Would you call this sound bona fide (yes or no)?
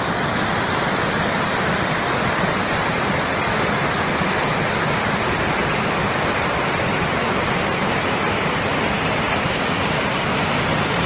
yes